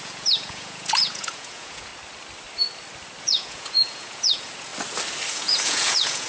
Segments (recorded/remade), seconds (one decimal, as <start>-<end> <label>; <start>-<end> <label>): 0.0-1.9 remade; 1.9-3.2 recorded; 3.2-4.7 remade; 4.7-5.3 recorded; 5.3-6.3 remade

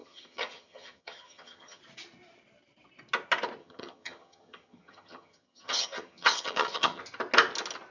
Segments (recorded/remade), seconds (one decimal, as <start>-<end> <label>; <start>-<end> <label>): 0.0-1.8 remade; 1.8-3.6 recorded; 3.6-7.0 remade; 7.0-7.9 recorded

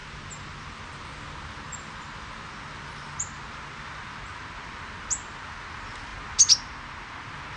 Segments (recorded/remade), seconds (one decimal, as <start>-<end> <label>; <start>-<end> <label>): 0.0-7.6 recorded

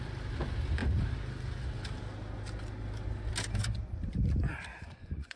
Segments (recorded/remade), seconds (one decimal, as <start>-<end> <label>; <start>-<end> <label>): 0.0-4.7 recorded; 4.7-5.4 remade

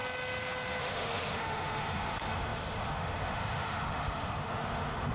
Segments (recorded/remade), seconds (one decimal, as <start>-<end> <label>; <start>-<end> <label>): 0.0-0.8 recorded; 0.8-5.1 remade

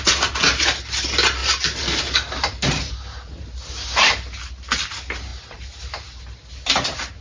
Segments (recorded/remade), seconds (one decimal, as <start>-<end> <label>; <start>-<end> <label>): 0.0-7.2 recorded

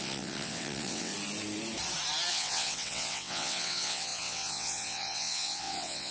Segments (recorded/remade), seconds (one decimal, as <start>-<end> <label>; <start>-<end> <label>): 0.0-1.1 remade; 1.1-2.3 recorded; 2.3-6.1 remade